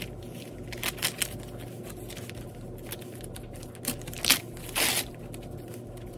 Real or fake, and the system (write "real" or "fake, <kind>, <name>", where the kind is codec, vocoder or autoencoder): real